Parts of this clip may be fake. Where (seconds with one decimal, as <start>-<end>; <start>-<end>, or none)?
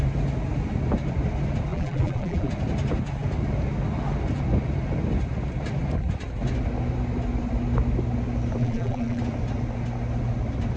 1.7-2.5; 8.6-9.2